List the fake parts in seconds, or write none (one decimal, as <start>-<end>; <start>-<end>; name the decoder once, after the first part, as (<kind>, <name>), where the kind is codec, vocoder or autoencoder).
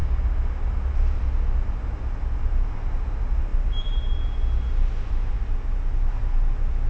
none